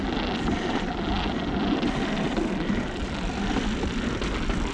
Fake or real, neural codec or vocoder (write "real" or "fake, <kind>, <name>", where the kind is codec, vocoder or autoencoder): real